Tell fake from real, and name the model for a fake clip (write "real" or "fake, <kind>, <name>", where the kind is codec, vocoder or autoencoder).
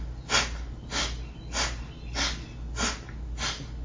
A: real